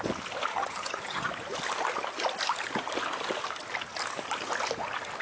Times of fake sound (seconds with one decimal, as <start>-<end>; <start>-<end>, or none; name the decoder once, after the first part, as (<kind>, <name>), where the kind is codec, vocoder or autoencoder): 0.5-1.3 (vocoder, HiFi-GAN)